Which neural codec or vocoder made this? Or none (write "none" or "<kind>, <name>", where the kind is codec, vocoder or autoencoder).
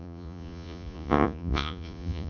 vocoder, Vocos